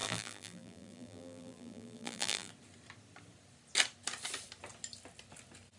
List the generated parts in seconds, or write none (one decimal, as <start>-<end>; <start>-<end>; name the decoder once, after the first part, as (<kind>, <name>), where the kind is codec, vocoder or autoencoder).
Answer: 0.0-2.5 (vocoder, BigVGAN v2)